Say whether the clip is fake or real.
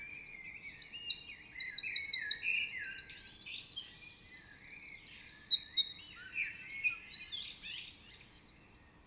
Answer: real